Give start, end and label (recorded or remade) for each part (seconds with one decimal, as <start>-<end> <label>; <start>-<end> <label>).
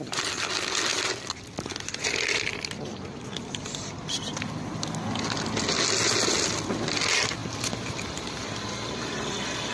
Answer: 0.0-9.7 recorded